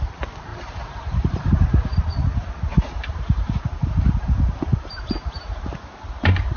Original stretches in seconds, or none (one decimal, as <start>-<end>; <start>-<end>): 0.0-0.5; 1.5-2.7; 6.0-6.6